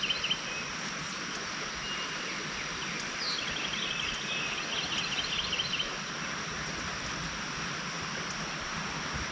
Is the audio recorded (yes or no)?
yes